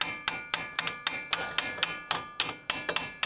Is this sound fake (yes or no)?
no